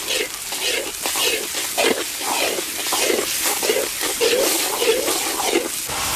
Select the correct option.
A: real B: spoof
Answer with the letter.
A